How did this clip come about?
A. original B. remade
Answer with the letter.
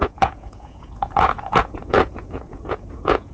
B